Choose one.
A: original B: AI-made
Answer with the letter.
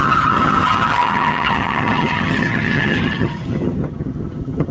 B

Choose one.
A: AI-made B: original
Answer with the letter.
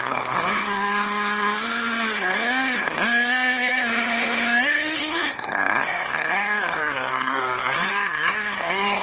A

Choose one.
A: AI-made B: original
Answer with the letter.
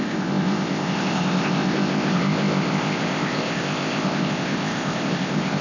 A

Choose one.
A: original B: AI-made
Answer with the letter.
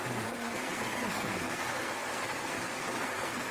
B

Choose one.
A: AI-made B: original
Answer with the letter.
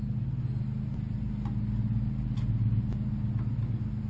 B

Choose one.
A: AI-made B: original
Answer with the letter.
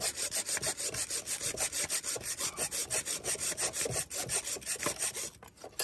B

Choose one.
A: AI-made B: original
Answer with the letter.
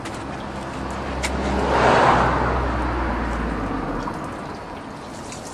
B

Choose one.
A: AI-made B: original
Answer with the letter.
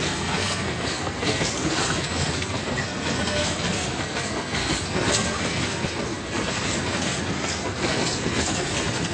A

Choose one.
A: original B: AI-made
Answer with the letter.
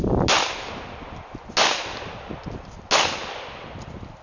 A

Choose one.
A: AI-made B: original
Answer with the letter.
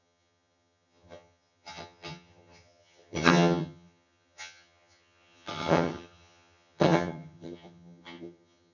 A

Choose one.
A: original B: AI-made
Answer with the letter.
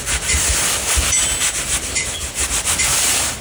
A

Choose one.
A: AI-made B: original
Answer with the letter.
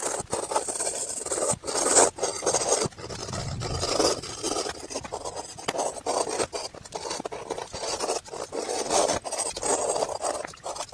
B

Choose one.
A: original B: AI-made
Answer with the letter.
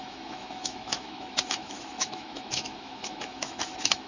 B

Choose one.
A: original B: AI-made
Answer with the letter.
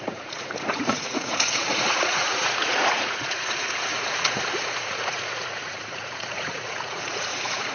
B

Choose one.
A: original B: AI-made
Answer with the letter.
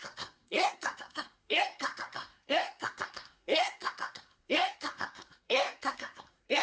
B